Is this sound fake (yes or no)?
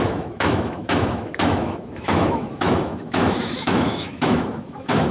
yes